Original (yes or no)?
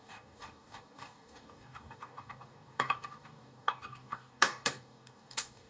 no